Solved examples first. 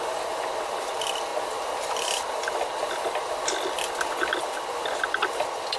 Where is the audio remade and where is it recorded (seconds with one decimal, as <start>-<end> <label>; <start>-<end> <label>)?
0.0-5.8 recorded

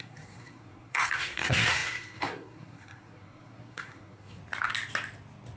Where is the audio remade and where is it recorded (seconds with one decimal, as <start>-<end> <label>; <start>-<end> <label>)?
0.0-4.4 remade; 4.4-5.6 recorded

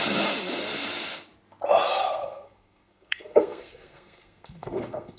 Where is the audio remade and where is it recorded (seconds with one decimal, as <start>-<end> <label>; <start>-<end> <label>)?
0.0-2.0 recorded; 2.0-5.2 remade